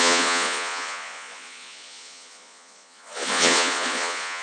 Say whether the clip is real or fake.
fake